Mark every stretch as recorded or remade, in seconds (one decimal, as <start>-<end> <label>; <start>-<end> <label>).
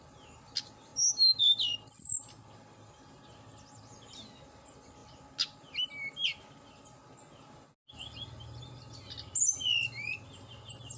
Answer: 0.0-11.0 recorded